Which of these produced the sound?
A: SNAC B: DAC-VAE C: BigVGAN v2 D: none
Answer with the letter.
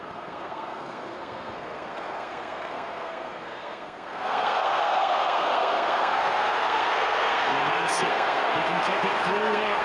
A